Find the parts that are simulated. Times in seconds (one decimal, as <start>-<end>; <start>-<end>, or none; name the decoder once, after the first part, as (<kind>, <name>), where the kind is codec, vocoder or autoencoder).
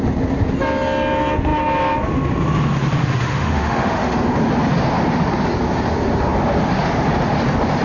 3.0-4.2 (autoencoder, DAC-VAE)